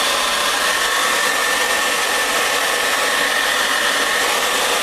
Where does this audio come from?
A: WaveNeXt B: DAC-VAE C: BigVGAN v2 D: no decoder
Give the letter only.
D